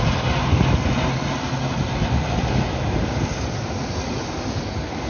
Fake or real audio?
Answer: real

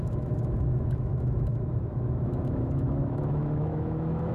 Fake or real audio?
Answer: fake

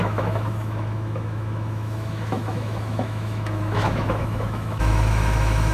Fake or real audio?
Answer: fake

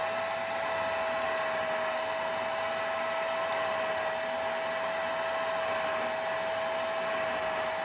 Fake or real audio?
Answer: real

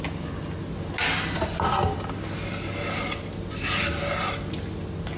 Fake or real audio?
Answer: real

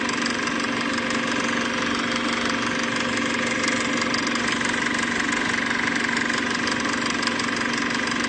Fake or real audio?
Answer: real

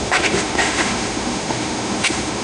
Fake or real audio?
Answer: fake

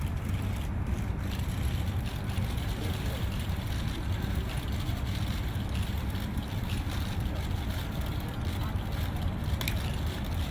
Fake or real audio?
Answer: real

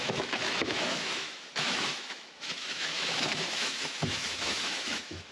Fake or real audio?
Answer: fake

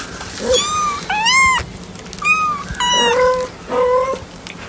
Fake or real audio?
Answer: real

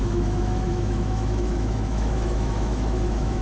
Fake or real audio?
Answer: fake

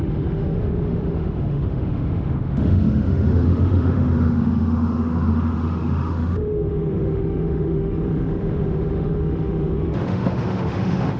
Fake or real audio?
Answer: fake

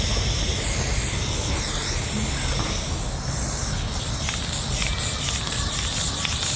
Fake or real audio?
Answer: real